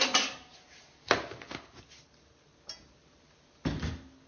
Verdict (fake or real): real